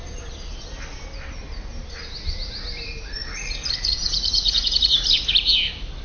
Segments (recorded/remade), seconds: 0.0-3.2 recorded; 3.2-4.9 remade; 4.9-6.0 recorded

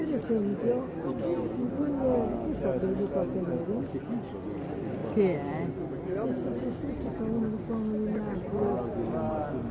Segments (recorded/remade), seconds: 0.0-9.7 recorded

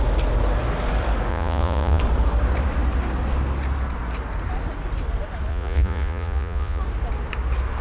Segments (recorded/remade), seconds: 0.0-1.3 recorded; 1.3-2.0 remade; 2.0-5.5 recorded; 5.5-6.8 remade; 6.8-7.8 recorded

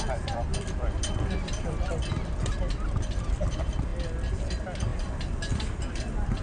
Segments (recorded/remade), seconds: 0.0-3.9 remade; 3.9-4.5 recorded; 4.5-4.9 remade; 4.9-5.9 recorded; 5.9-6.4 remade

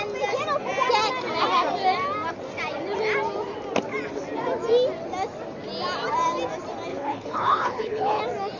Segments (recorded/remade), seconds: 0.0-6.9 recorded; 6.9-8.2 remade; 8.2-8.6 recorded

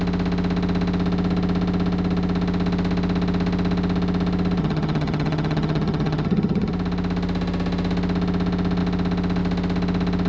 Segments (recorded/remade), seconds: 0.0-4.6 recorded; 4.6-6.7 remade; 6.7-10.3 recorded

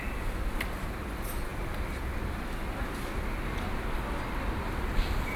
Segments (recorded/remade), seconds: 0.0-5.4 recorded

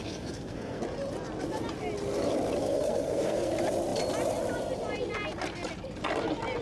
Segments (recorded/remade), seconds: 0.0-0.8 remade; 0.8-2.6 recorded; 2.6-3.5 remade; 3.5-6.6 recorded